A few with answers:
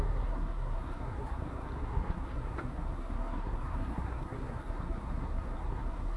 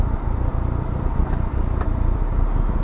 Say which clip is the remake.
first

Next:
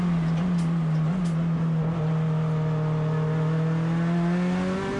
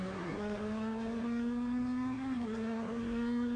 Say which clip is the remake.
second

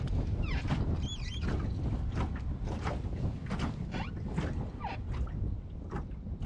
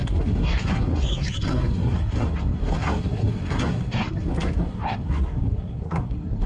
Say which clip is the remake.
second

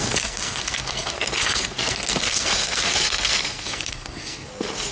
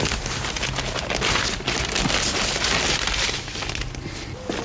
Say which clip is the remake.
first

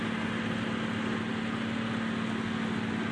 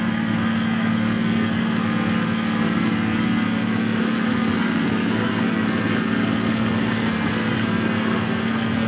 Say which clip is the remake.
second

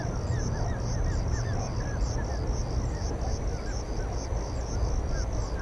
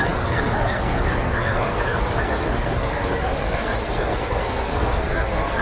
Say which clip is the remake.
second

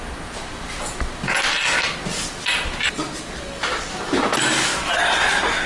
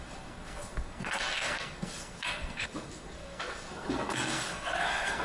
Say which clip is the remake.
second